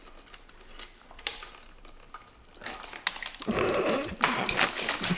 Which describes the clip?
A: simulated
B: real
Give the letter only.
B